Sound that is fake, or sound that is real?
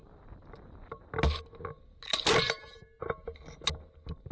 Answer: real